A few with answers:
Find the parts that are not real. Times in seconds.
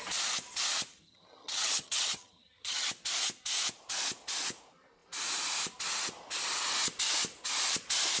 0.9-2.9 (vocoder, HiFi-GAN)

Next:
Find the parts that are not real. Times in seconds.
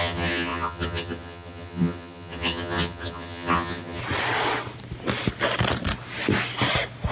0.0-4.0 (vocoder, HiFi-GAN)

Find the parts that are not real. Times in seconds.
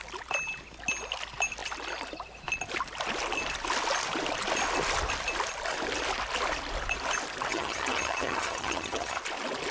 7.5-9.2 (vocoder, HiFi-GAN)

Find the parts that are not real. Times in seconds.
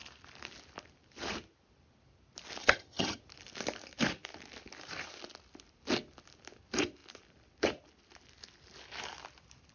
2.6-3.2 (vocoder, HiFi-GAN)